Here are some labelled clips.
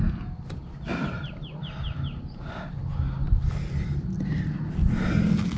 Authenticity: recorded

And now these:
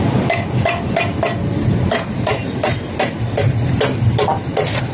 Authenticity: recorded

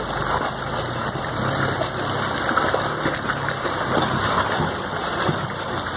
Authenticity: recorded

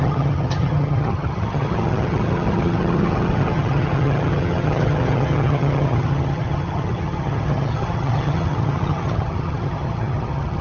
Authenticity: remade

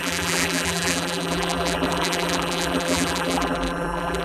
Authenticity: remade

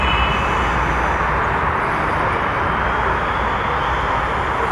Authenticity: recorded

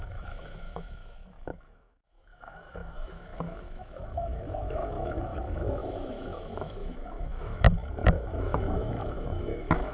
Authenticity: remade